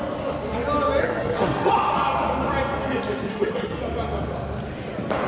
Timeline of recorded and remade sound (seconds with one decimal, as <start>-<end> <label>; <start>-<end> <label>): 0.0-1.0 recorded; 1.0-1.7 remade; 1.7-3.3 recorded; 3.3-3.8 remade; 3.8-5.3 recorded